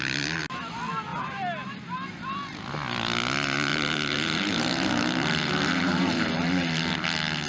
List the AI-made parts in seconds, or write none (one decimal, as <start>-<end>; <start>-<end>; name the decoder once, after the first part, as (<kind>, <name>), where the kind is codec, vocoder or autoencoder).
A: 1.1-2.7 (vocoder, BigVGAN v2); 3.7-6.3

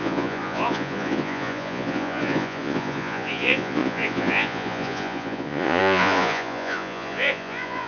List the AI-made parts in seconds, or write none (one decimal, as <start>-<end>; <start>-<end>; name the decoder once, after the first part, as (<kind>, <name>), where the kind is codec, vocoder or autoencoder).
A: 0.0-7.9 (vocoder, Vocos)

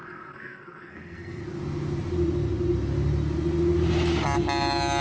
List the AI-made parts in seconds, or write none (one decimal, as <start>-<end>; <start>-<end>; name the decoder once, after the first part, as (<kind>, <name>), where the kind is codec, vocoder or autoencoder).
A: 0.0-1.4 (codec, SNAC)